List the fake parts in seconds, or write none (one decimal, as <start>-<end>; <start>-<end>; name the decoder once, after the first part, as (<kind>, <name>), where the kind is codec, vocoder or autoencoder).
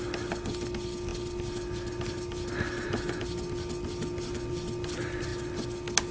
none